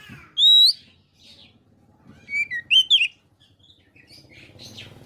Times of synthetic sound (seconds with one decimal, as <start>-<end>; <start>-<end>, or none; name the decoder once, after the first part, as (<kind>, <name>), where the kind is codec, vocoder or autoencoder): none